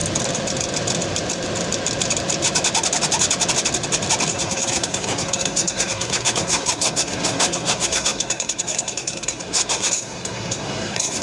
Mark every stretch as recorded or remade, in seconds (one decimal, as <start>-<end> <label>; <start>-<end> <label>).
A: 0.0-4.3 recorded; 4.3-11.2 remade